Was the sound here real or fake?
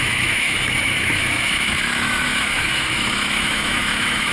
fake